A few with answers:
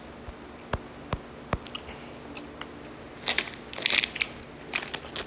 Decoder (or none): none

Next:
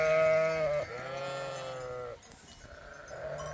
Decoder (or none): none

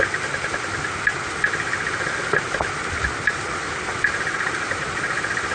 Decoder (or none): none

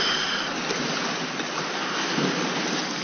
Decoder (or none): none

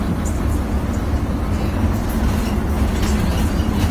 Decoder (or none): none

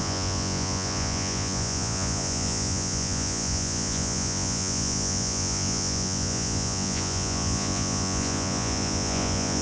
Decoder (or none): vocoder, Vocos